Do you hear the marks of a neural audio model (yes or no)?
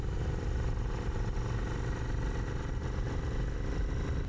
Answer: no